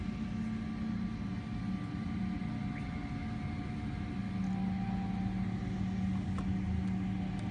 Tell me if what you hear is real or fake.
real